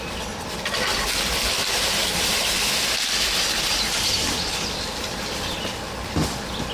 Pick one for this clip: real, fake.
real